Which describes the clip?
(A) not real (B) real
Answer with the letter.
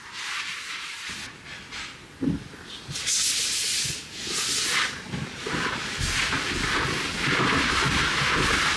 B